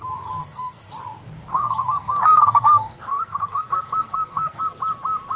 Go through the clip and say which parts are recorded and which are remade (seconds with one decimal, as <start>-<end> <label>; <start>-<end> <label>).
0.0-0.4 recorded; 0.4-0.9 remade; 0.9-1.5 recorded; 1.5-4.6 remade; 4.6-5.4 recorded